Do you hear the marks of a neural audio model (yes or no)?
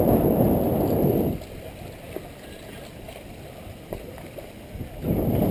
no